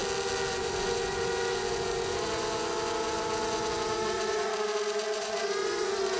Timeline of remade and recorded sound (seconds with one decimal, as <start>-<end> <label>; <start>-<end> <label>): 0.0-0.5 recorded; 0.5-6.2 remade